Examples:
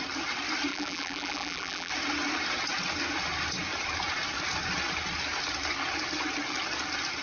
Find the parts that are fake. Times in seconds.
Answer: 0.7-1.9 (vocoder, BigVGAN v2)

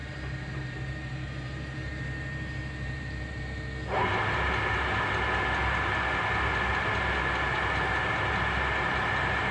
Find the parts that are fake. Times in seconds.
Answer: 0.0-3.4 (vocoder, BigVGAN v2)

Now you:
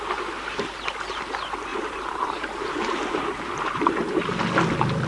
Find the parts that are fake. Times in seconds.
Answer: 1.7-4.3 (vocoder, BigVGAN v2)

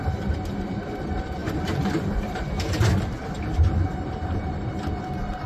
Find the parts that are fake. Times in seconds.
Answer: 1.4-4.7 (vocoder, BigVGAN v2)